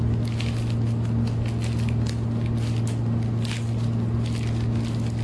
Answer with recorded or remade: recorded